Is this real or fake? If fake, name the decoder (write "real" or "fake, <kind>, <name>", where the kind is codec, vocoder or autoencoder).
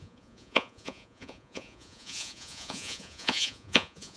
fake, vocoder, Vocos